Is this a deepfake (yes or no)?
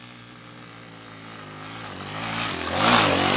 no